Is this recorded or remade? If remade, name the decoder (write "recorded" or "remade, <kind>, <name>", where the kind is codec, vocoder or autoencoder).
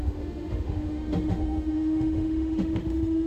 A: remade, autoencoder, DAC-VAE